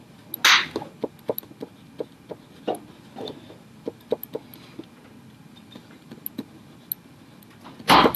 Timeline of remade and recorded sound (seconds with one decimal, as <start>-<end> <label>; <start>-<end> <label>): 0.0-8.2 recorded